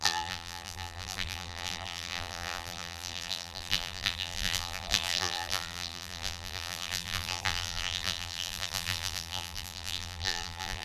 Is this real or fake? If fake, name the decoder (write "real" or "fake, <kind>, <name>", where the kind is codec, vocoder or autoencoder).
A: fake, vocoder, BigVGAN v2